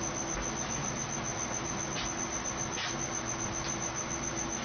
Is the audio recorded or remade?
recorded